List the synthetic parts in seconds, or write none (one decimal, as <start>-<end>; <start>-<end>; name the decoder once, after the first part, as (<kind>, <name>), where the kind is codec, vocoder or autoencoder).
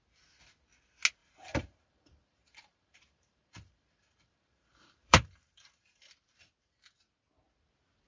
1.2-6.1 (vocoder, BigVGAN v2)